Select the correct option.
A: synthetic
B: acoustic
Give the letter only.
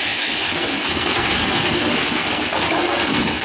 A